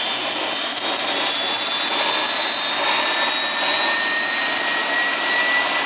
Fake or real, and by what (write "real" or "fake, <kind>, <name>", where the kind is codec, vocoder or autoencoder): real